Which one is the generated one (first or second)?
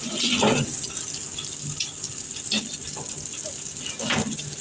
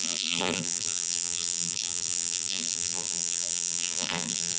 second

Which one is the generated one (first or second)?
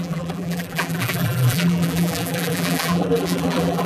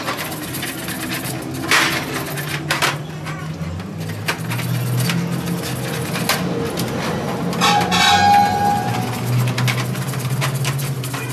first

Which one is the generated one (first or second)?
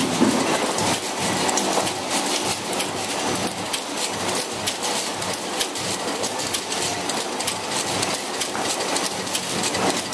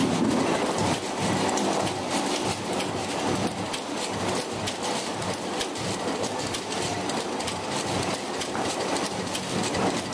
second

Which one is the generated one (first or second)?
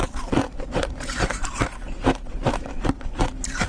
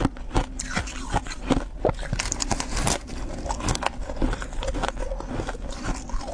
first